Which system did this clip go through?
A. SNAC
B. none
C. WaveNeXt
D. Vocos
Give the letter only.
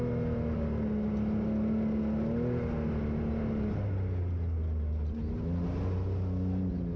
B